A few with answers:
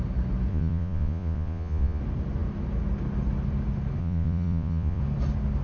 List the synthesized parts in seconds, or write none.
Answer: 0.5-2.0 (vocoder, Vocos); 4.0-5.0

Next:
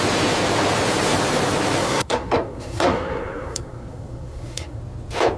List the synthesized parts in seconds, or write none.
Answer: 1.8-4.8 (codec, SNAC)

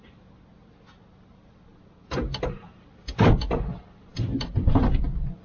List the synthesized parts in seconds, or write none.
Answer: 1.7-2.8 (vocoder, BigVGAN v2)

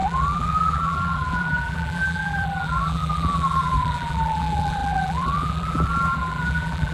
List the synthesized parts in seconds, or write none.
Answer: 0.0-6.9 (vocoder, BigVGAN v2)